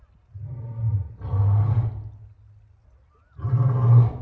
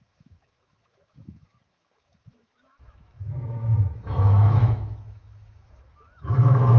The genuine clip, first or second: first